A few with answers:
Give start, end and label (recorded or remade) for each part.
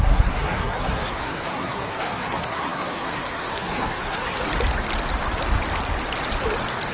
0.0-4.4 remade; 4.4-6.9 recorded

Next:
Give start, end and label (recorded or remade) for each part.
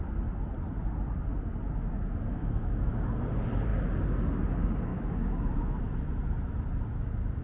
0.0-2.4 recorded; 2.4-2.9 remade; 2.9-4.9 recorded; 4.9-5.9 remade; 5.9-7.4 recorded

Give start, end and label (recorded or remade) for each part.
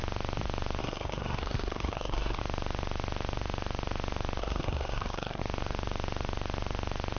0.0-0.8 recorded; 0.8-2.4 remade; 2.4-4.4 recorded; 4.4-5.4 remade; 5.4-7.2 recorded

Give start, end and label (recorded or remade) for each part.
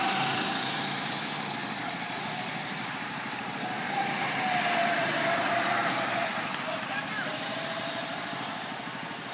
0.0-9.3 remade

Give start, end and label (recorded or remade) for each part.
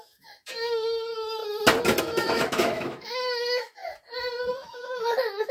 0.0-1.4 remade; 1.4-2.0 recorded; 2.0-3.8 remade; 3.8-4.5 recorded; 4.5-5.5 remade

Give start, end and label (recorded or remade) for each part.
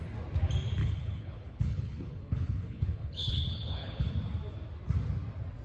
0.0-0.8 recorded; 0.8-4.1 remade; 4.1-5.6 recorded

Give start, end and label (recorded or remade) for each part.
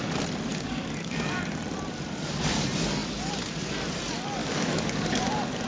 0.0-0.5 recorded; 0.5-1.6 remade; 1.6-4.4 recorded; 4.4-5.2 remade; 5.2-5.7 recorded